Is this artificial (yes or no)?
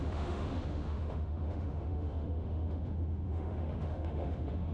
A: yes